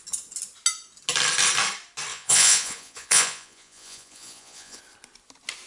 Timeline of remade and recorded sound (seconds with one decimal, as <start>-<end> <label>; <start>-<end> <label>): 0.0-2.1 recorded; 2.1-4.8 remade; 4.8-5.7 recorded